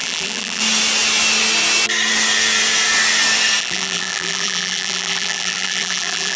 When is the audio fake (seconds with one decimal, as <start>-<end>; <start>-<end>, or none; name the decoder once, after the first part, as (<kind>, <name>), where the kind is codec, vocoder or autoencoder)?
0.0-0.6 (vocoder, BigVGAN v2); 3.6-6.4